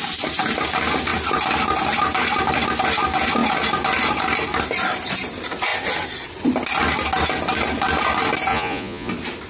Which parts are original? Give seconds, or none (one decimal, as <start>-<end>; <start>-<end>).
0.0-8.5; 9.1-9.5